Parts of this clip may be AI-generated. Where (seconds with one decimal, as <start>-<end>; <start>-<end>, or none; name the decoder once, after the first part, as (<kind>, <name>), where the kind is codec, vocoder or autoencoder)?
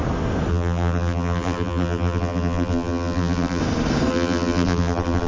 0.5-3.6 (vocoder, BigVGAN v2); 4.1-5.3